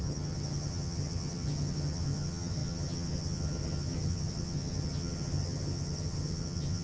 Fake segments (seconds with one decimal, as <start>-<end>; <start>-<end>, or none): 0.0-6.8